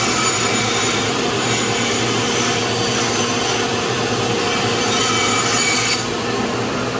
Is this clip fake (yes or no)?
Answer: no